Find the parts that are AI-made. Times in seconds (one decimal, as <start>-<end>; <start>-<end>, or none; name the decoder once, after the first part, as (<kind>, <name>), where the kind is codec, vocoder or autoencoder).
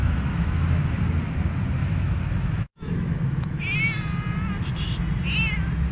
0.0-0.8 (autoencoder, DAC-VAE); 1.8-3.6